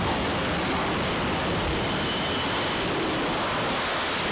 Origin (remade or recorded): recorded